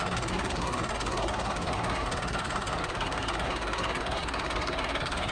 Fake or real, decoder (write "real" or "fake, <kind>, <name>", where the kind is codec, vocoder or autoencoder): fake, codec, SNAC